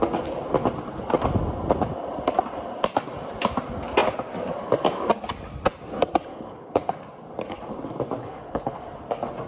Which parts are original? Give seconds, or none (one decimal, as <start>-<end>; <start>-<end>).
0.0-6.3; 6.9-8.2; 8.8-9.5